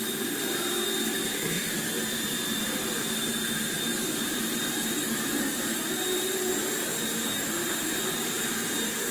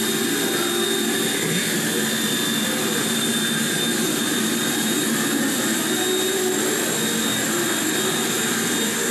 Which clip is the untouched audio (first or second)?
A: second